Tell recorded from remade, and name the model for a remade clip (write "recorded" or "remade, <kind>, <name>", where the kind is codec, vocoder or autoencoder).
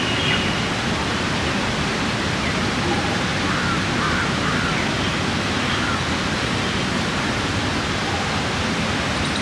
recorded